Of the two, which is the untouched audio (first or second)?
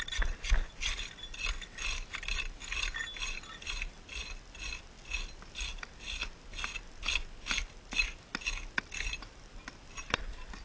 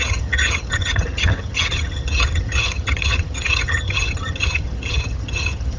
first